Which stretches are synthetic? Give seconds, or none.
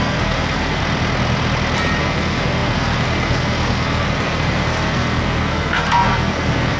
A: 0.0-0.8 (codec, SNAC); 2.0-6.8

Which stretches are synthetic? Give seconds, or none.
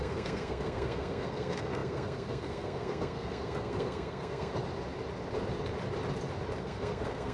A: 0.0-4.5 (codec, SNAC); 6.6-7.3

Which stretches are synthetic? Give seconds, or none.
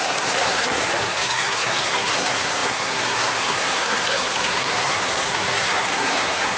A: 0.0-6.6 (codec, SNAC)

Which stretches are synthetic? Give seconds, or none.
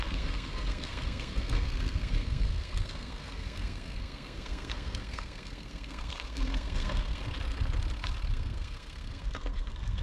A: 0.0-7.2 (codec, SNAC); 8.3-10.0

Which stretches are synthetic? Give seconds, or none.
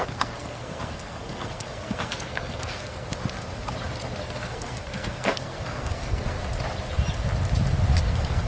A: 0.0-3.1 (codec, SNAC); 4.2-6.4; 8.0-8.5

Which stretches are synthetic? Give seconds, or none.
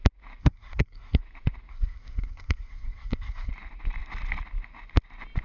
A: 0.4-1.2 (codec, SNAC); 1.7-3.5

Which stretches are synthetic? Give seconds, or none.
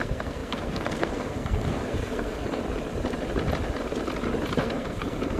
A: 0.0-2.6 (codec, SNAC); 4.6-5.4